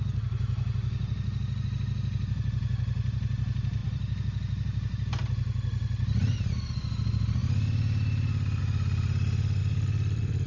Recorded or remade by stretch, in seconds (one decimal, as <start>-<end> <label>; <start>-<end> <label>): 0.0-3.8 recorded; 3.8-5.1 remade; 5.1-9.6 recorded; 9.6-10.5 remade